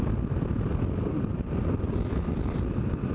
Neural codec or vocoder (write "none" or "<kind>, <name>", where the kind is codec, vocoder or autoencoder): none